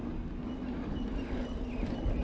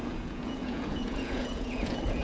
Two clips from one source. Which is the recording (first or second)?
first